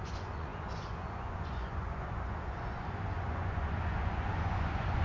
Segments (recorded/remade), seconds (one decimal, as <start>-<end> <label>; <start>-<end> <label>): 0.0-5.0 remade